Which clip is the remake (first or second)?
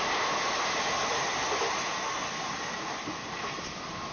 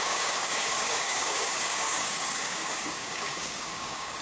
second